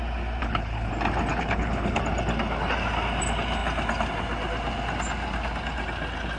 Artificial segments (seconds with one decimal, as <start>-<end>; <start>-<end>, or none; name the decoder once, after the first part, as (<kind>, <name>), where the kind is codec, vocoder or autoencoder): 0.4-0.9 (codec, HILCodec); 1.3-2.0